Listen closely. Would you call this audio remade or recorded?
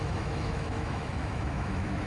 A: remade